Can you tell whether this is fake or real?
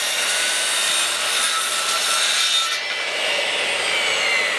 real